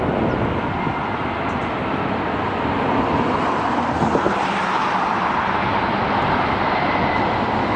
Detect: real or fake real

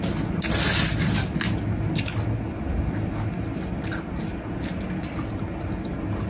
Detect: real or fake real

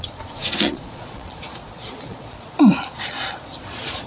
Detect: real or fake fake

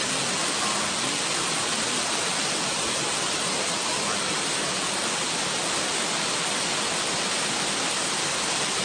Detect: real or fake real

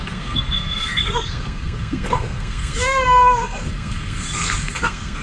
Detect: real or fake fake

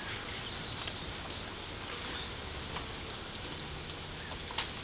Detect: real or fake real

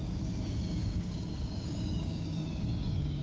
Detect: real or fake fake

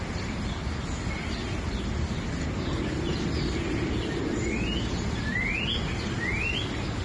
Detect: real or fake real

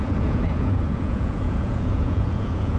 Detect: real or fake fake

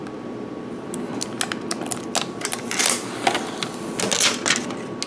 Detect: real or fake real